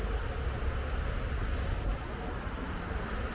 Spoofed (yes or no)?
no